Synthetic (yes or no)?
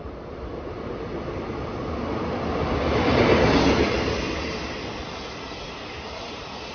no